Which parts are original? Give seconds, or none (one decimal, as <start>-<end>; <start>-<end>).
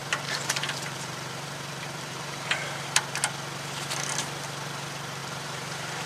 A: 3.0-5.2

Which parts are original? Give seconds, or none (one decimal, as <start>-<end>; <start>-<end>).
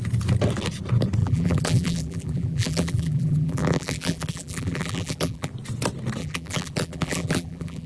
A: 0.0-1.2; 5.5-6.2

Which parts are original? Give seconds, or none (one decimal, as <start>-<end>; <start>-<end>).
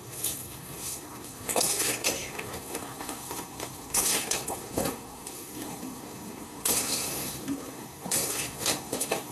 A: none